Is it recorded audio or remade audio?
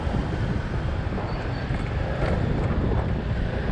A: recorded